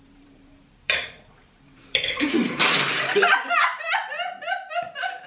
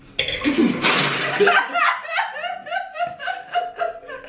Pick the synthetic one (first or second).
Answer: first